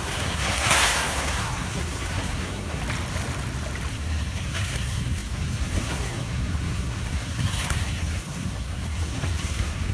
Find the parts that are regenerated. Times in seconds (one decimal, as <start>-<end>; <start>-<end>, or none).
0.0-2.8; 3.9-9.9